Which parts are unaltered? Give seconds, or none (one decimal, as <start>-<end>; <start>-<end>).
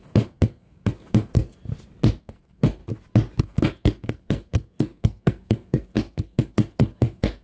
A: 1.7-2.2; 2.8-3.4